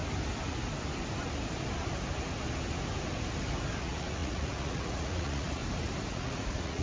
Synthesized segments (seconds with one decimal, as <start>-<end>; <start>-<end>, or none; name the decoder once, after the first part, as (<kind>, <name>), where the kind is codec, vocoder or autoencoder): 3.8-5.6 (vocoder, Vocos); 6.1-6.8